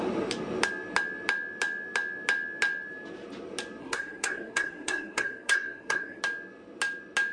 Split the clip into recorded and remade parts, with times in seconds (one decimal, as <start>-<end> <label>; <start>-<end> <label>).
0.0-3.8 recorded; 3.8-6.2 remade; 6.2-7.3 recorded